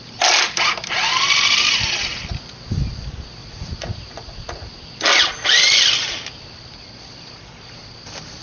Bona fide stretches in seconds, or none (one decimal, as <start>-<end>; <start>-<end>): 0.0-3.4; 4.7-8.4